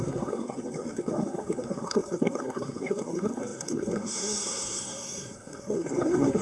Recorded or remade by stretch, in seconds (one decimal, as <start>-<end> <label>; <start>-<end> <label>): 0.0-6.4 remade